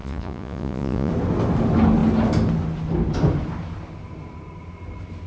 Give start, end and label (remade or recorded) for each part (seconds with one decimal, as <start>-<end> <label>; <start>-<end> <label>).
0.0-1.1 remade; 1.1-5.3 recorded